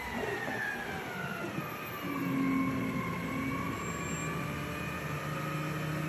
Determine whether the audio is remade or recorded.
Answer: recorded